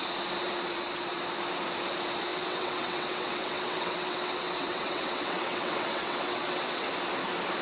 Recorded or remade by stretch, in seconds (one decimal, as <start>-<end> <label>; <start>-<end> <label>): 0.0-2.3 recorded; 2.3-6.9 remade; 6.9-7.6 recorded